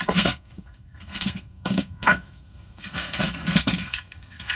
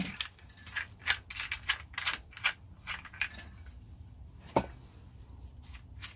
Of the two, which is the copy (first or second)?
first